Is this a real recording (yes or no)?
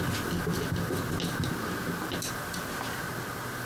yes